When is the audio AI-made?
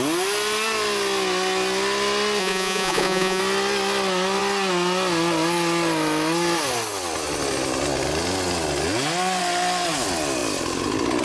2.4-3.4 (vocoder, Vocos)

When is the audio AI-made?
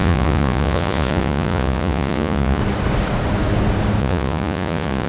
0.0-2.6 (vocoder, Vocos); 4.0-5.1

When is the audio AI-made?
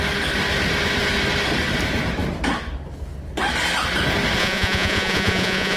4.4-5.8 (vocoder, Vocos)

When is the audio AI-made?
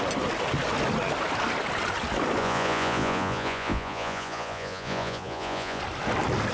2.4-5.8 (vocoder, Vocos)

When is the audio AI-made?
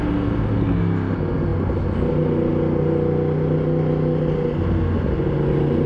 none